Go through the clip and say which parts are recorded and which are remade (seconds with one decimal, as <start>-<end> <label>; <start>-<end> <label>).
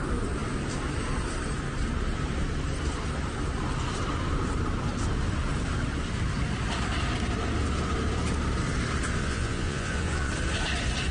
0.0-9.2 recorded; 9.2-10.3 remade; 10.3-11.1 recorded